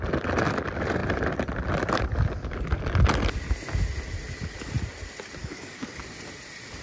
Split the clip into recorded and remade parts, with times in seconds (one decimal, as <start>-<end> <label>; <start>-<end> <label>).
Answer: 0.0-5.4 recorded; 5.4-6.0 remade; 6.0-6.8 recorded

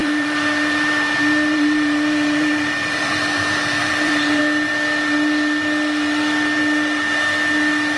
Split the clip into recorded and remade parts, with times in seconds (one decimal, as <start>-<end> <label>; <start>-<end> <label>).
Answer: 0.0-4.4 remade; 4.4-8.0 recorded

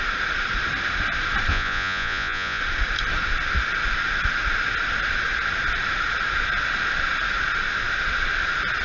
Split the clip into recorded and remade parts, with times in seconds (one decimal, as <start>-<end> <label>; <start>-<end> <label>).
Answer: 0.0-1.5 recorded; 1.5-2.6 remade; 2.6-8.8 recorded

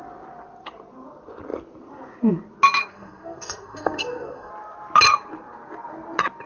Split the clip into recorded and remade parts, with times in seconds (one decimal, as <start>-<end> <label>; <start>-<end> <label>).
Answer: 0.0-2.9 recorded; 2.9-4.5 remade; 4.5-6.5 recorded

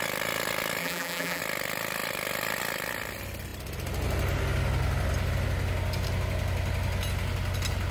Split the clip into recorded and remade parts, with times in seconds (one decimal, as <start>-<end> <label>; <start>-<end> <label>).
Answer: 0.0-0.8 recorded; 0.8-1.4 remade; 1.4-7.9 recorded

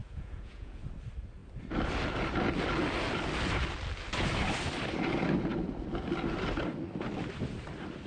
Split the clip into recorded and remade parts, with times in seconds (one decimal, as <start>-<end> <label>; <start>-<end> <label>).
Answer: 0.0-0.8 remade; 0.8-8.1 recorded